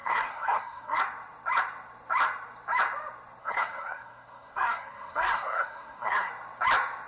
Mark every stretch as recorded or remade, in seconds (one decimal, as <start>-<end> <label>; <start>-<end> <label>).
0.0-1.0 remade; 1.0-3.4 recorded; 3.4-6.3 remade; 6.3-7.1 recorded